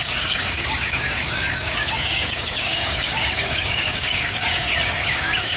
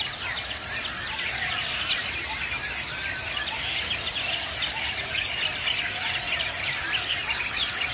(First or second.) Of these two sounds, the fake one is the first